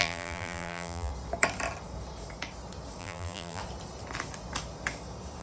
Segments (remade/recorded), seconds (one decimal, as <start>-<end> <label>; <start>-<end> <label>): 0.0-1.1 remade; 1.1-3.0 recorded; 3.0-3.6 remade; 3.6-5.4 recorded

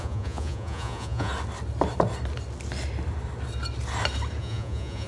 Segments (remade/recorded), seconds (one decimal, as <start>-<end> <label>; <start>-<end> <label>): 0.0-1.3 remade; 1.3-4.4 recorded; 4.4-5.1 remade

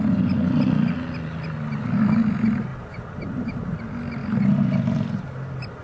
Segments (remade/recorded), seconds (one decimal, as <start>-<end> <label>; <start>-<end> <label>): 0.0-2.7 recorded; 2.7-3.8 remade; 3.8-5.8 recorded

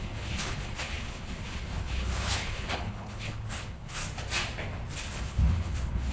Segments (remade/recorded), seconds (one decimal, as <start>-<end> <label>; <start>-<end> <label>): 0.0-4.0 remade; 4.0-5.0 recorded; 5.0-6.1 remade

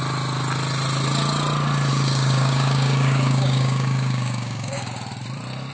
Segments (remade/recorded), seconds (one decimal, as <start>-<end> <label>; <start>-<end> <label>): 0.0-1.9 recorded; 1.9-4.9 remade; 4.9-5.7 recorded